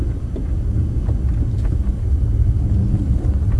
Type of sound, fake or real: real